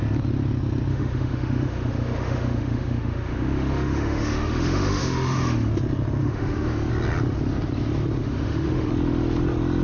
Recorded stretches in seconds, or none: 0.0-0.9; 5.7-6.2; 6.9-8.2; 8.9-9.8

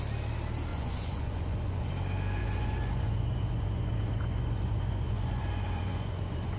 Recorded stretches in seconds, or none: 0.0-0.7; 1.9-2.4

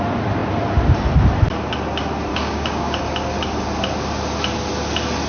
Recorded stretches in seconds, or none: 0.0-2.3; 3.0-5.3

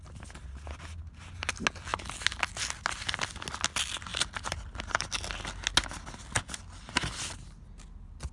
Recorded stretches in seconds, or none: 0.0-8.3

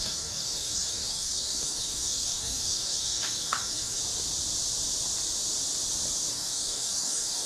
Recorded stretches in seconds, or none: 4.0-6.3

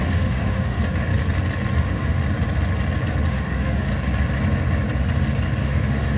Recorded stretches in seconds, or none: 1.1-1.8; 2.2-3.3; 3.9-5.6

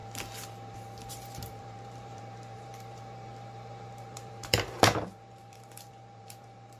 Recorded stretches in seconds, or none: 0.0-1.1